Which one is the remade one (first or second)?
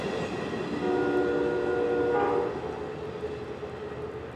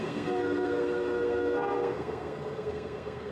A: second